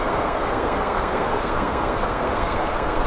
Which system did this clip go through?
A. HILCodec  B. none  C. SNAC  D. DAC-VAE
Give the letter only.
C